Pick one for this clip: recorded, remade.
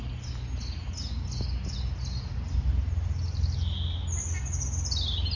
recorded